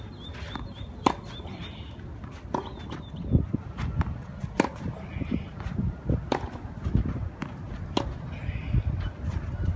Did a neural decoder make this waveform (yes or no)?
no